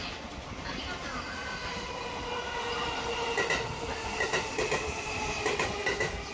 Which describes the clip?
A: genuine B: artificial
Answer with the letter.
A